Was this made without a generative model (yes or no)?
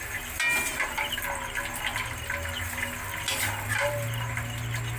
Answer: yes